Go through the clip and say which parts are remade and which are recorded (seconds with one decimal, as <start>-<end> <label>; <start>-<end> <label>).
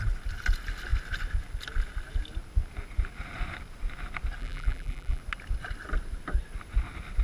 0.0-4.4 recorded; 4.4-5.2 remade; 5.2-7.2 recorded